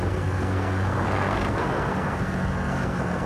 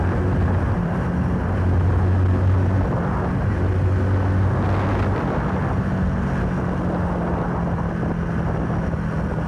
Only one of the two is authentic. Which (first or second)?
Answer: second